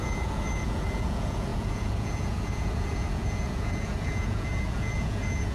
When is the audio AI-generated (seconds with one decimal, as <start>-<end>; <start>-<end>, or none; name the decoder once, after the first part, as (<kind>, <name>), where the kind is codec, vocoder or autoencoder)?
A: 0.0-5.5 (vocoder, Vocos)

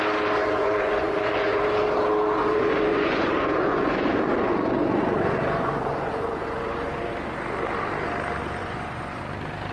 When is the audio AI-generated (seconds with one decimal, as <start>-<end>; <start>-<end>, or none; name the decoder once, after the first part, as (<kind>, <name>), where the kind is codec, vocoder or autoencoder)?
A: 0.4-1.6 (vocoder, Vocos); 2.4-7.1; 8.6-9.2

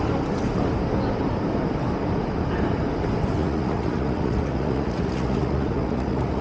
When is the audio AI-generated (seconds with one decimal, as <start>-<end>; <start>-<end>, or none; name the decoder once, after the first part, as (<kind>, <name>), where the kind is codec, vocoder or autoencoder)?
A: 3.4-6.4 (vocoder, Vocos)